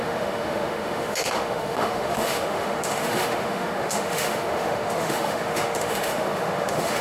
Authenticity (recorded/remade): remade